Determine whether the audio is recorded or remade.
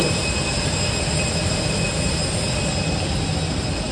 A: recorded